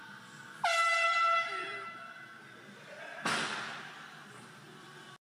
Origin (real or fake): real